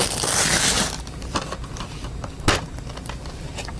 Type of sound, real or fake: real